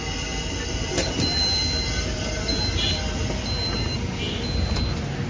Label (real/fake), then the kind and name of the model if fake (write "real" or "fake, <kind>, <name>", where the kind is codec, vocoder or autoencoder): real